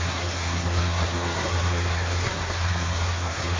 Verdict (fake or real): fake